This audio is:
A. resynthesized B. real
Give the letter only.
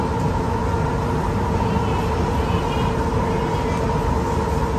B